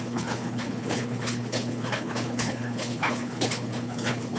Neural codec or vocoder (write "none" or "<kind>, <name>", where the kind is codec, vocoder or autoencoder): codec, HILCodec